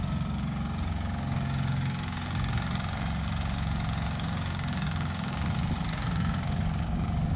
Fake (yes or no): yes